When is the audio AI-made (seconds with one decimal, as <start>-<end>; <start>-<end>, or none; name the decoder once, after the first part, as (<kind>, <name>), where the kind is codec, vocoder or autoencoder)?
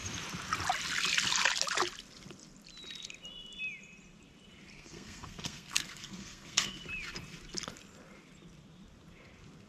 4.7-6.8 (codec, SNAC)